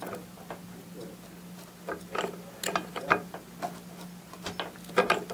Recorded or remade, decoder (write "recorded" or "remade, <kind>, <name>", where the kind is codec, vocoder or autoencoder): recorded